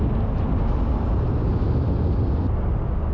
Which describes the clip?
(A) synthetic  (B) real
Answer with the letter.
B